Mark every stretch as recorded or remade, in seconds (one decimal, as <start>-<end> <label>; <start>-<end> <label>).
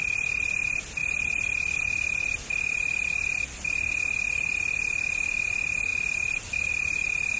0.0-5.9 recorded; 5.9-6.7 remade; 6.7-7.4 recorded